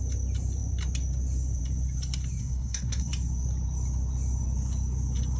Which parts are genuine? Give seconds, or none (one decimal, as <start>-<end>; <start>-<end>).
0.0-2.4; 3.1-5.4